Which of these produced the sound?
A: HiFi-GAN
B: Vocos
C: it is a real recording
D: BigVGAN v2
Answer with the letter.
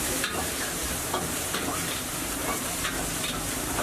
D